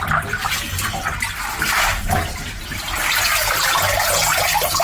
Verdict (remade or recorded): recorded